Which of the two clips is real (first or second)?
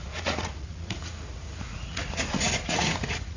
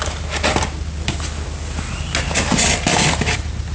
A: second